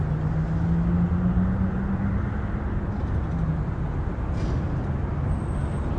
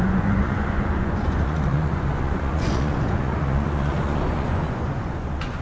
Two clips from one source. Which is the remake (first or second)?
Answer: second